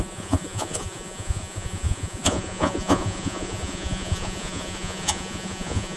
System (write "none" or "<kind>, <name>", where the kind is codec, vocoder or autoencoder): vocoder, Vocos